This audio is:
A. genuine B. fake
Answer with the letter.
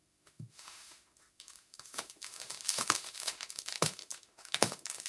B